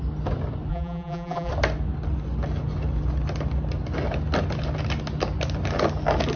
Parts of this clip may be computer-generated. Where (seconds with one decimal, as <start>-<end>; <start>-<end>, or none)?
0.7-1.5